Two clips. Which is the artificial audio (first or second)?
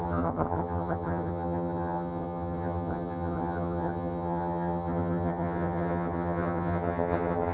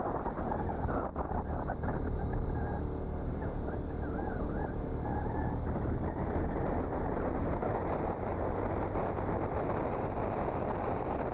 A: first